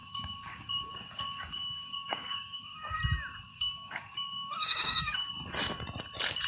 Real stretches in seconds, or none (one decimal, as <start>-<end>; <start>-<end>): 3.0-3.5; 5.3-6.5